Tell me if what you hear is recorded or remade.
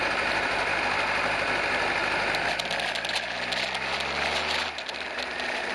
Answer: recorded